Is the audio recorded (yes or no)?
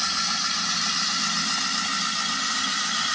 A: yes